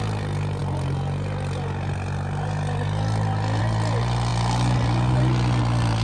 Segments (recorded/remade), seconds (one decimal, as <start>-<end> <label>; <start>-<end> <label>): 0.0-6.0 recorded

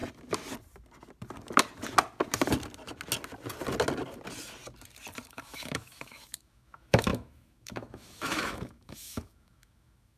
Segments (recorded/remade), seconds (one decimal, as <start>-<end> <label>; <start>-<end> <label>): 0.0-5.3 recorded; 5.3-10.2 remade

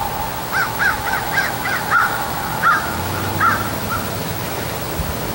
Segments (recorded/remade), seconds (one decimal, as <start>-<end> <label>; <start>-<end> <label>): 0.0-0.6 recorded; 0.6-3.2 remade; 3.2-4.2 recorded; 4.2-4.8 remade; 4.8-5.3 recorded